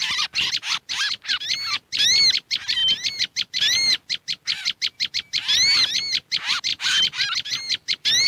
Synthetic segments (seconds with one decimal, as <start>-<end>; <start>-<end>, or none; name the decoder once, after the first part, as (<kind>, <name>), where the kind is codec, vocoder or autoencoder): none